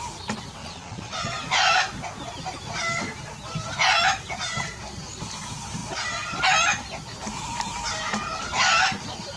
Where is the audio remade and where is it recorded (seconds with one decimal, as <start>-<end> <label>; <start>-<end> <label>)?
0.0-0.6 recorded; 0.6-1.3 remade; 1.3-9.4 recorded